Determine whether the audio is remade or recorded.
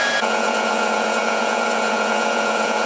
remade